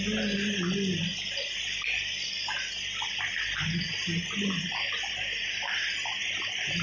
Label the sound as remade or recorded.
recorded